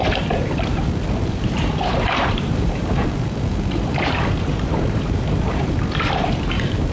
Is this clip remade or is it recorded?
remade